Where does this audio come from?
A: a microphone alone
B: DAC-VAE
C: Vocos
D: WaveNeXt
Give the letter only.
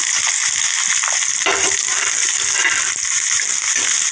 A